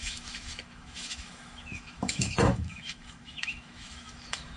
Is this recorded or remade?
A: remade